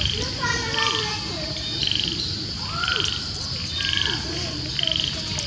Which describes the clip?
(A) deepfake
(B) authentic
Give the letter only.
B